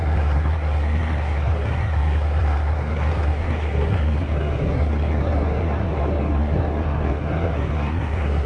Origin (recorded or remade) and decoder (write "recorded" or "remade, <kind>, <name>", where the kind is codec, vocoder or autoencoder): remade, codec, SNAC